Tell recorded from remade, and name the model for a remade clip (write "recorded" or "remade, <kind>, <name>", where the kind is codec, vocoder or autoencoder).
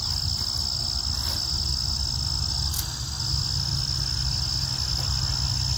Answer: recorded